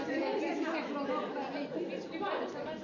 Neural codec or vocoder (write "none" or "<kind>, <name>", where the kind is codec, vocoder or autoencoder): none